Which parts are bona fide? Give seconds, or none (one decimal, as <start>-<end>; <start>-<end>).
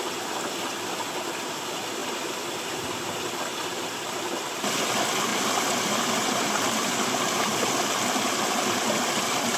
0.0-5.3; 7.7-9.6